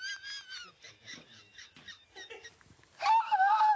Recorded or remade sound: recorded